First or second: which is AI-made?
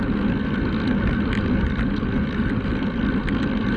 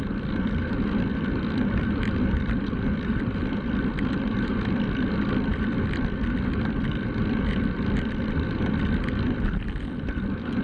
second